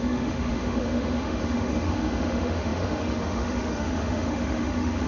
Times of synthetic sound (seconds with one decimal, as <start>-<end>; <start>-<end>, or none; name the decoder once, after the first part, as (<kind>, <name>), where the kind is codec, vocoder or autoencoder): 0.0-5.1 (autoencoder, DAC-VAE)